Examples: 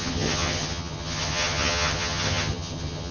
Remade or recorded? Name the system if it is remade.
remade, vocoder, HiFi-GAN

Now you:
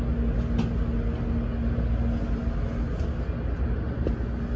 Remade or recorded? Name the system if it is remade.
recorded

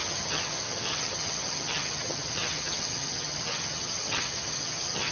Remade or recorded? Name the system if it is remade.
remade, vocoder, HiFi-GAN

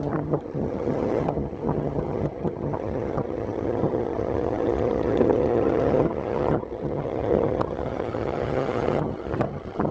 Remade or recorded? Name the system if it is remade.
remade, vocoder, HiFi-GAN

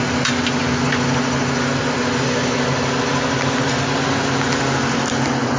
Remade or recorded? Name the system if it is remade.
recorded